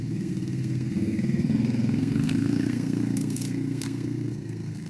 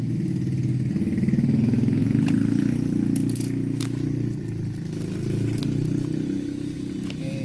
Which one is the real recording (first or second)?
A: second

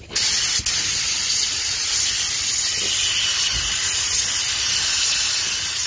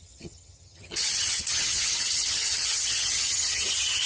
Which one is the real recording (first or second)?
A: first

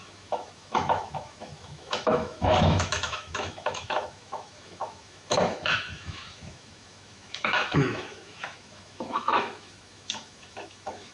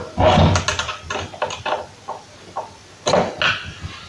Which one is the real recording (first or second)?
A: second